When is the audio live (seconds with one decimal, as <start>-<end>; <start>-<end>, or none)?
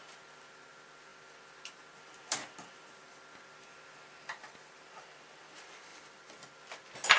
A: 0.0-1.1; 1.6-5.9; 6.6-7.2